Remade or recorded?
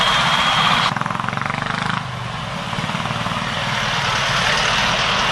recorded